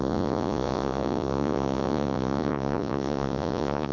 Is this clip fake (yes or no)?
yes